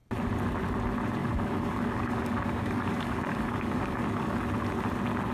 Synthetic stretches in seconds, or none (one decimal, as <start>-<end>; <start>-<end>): 1.2-4.4